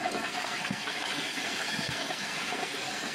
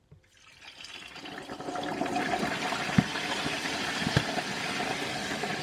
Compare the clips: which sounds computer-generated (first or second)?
first